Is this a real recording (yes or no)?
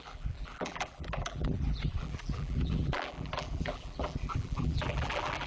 no